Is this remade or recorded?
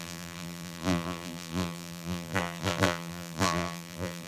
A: remade